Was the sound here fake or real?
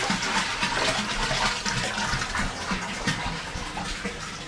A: real